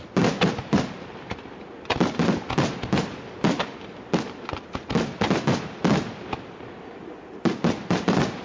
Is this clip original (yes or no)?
yes